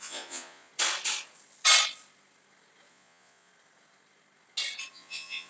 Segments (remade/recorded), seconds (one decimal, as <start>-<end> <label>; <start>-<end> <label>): 0.0-0.7 remade; 0.7-2.9 recorded; 2.9-3.5 remade; 3.5-4.9 recorded; 4.9-5.5 remade

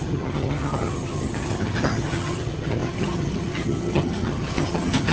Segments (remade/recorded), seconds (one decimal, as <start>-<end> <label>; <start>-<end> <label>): 0.0-5.1 remade

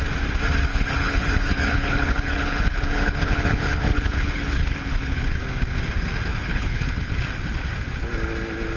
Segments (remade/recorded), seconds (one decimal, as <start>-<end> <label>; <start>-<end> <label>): 0.0-0.7 recorded; 0.7-5.4 remade; 5.4-6.3 recorded; 6.3-7.1 remade; 7.1-8.8 recorded

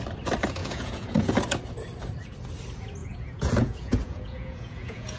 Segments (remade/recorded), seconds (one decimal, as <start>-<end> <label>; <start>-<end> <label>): 0.0-0.6 recorded; 0.6-1.3 remade; 1.3-3.0 recorded; 3.0-5.2 remade

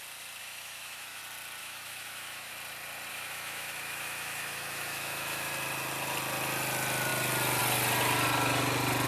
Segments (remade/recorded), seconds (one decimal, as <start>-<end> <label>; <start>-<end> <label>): 0.0-0.4 recorded; 0.4-1.2 remade; 1.2-1.6 recorded; 1.6-2.5 remade; 2.5-3.1 recorded; 3.1-5.5 remade; 5.5-9.1 recorded